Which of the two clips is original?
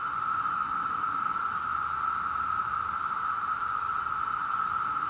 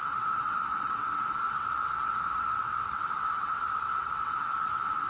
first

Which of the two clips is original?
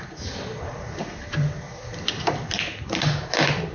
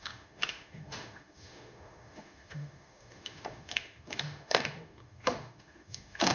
first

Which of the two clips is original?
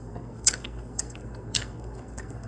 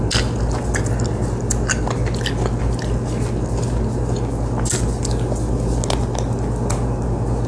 second